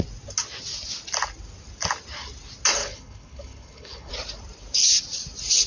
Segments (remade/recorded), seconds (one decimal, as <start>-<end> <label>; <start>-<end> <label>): 0.0-2.8 recorded; 2.8-4.1 remade; 4.1-5.7 recorded